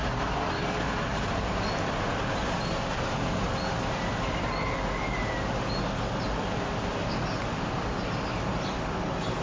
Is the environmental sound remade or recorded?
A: recorded